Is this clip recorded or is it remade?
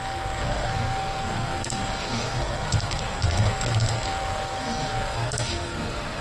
remade